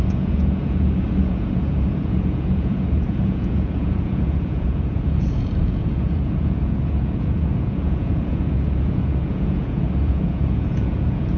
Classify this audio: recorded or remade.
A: remade